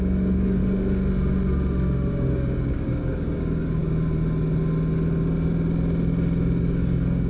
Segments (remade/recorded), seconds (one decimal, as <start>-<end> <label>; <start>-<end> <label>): 0.0-0.6 remade; 0.6-2.1 recorded; 2.1-3.8 remade; 3.8-6.6 recorded; 6.6-7.3 remade

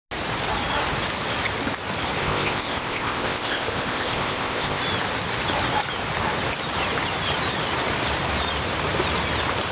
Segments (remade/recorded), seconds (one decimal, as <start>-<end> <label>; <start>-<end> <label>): 0.0-2.2 recorded; 2.2-4.8 remade; 4.8-9.7 recorded

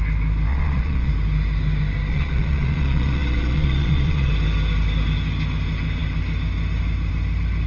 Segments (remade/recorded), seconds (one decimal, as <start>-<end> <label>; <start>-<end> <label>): 0.0-0.5 recorded; 0.5-1.1 remade; 1.1-2.1 recorded; 2.1-4.3 remade; 4.3-7.7 recorded

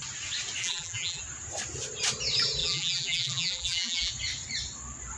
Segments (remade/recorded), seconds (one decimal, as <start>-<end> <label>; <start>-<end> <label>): 0.0-0.6 recorded; 0.6-1.2 remade; 1.2-2.6 recorded; 2.6-4.1 remade; 4.1-5.2 recorded

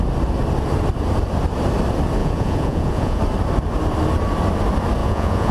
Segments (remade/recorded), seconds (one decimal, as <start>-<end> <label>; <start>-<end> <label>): 0.0-2.2 recorded; 2.2-3.2 remade; 3.2-5.0 recorded; 5.0-5.5 remade